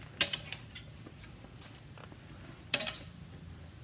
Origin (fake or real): real